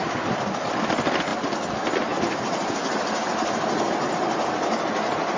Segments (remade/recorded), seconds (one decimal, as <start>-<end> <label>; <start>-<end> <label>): 0.0-5.4 recorded